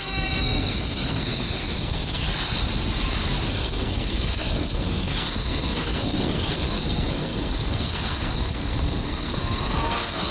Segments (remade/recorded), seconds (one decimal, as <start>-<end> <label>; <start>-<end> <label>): 0.0-2.2 remade; 2.2-3.5 recorded; 3.5-10.3 remade